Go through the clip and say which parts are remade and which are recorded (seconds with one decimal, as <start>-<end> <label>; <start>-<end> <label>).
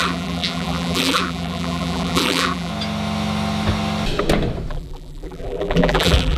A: 0.0-2.7 remade; 2.7-4.7 recorded; 4.7-6.4 remade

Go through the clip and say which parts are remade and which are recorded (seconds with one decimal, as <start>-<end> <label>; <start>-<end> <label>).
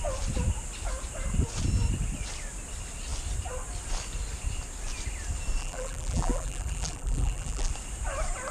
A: 0.0-5.6 recorded; 5.6-7.7 remade; 7.7-8.5 recorded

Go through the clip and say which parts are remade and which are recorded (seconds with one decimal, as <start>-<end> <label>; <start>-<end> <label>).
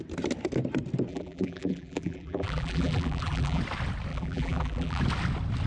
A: 0.0-1.1 recorded; 1.1-3.6 remade; 3.6-4.1 recorded; 4.1-5.0 remade; 5.0-5.7 recorded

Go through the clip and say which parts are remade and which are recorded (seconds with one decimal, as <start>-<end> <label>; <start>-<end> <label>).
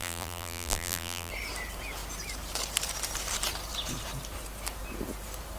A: 0.0-1.3 remade; 1.3-5.6 recorded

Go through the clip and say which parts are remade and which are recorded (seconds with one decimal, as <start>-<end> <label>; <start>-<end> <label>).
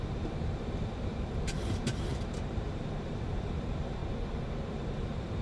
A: 0.0-4.0 remade; 4.0-4.7 recorded; 4.7-5.4 remade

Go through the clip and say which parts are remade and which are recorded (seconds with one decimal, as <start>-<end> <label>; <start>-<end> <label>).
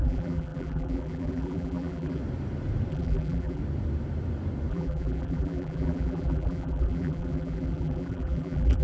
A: 0.0-2.2 remade; 2.2-2.9 recorded; 2.9-3.6 remade; 3.6-4.7 recorded; 4.7-8.8 remade